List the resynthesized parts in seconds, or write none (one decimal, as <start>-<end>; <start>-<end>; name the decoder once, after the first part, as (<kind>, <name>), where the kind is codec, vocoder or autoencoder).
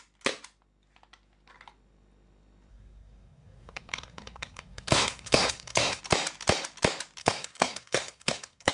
2.7-6.0 (codec, SNAC); 7.2-8.7